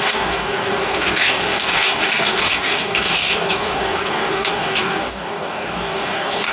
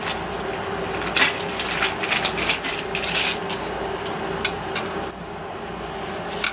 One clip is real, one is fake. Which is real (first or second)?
second